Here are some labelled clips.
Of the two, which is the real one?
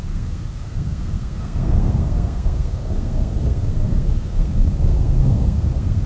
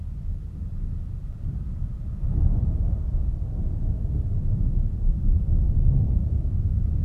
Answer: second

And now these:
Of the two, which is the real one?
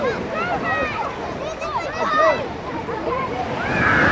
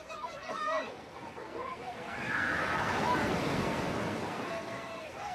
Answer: first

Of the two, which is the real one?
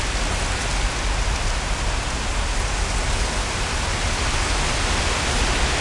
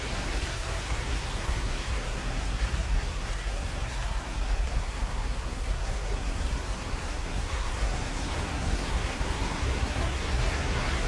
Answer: first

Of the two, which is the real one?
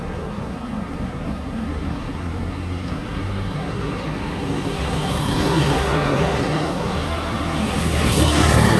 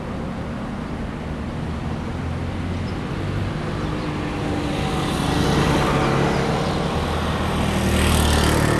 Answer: second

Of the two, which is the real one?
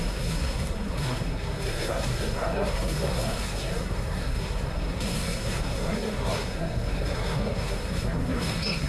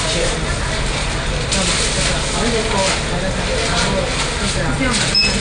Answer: second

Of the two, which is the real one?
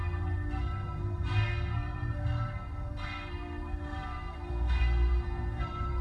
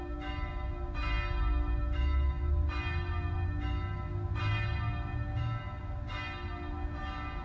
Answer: second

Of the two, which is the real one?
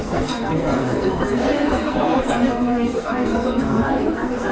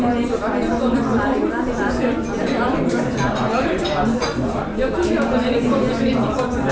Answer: second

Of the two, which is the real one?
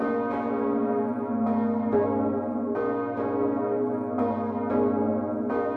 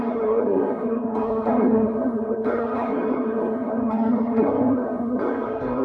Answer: first